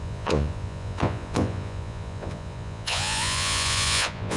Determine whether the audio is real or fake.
fake